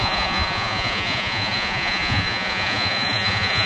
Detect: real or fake fake